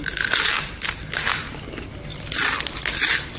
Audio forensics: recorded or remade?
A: recorded